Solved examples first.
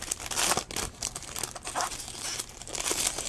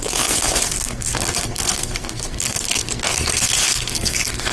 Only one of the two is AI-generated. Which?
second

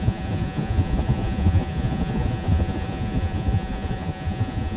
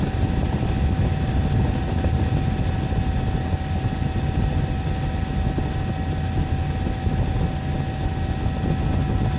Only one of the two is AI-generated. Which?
first